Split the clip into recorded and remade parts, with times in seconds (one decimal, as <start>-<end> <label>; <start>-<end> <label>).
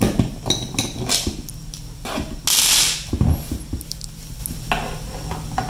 0.0-5.7 recorded